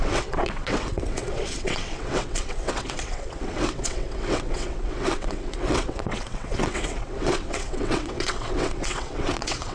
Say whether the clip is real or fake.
fake